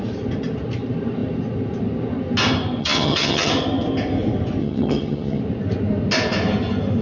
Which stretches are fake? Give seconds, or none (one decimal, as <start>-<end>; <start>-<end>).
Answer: 2.8-3.5; 4.6-5.4

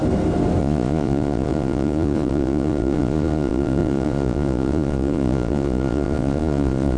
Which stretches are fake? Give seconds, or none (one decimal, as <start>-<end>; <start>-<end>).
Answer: 0.6-7.0

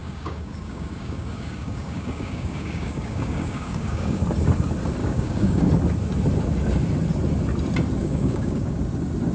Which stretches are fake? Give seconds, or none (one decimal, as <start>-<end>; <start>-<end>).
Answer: 0.0-4.2; 5.0-5.7; 8.0-8.8

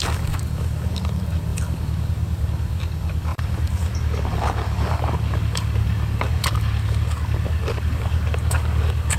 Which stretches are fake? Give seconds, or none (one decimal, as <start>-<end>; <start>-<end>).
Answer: 0.0-9.2